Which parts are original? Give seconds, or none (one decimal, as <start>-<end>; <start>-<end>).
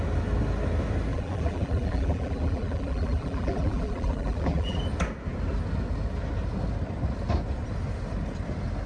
0.0-1.1; 4.8-8.9